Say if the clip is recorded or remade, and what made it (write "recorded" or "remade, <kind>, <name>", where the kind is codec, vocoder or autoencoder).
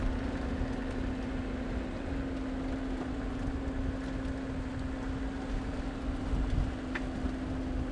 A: recorded